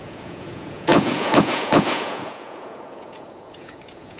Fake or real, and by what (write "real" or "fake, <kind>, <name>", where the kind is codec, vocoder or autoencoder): fake, vocoder, Vocos